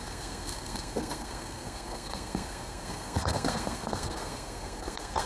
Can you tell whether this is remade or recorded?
remade